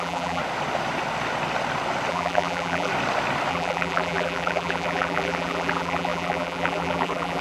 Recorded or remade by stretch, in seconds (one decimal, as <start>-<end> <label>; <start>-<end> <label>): 0.0-0.4 remade; 0.4-2.1 recorded; 2.1-2.9 remade; 2.9-3.5 recorded; 3.5-7.4 remade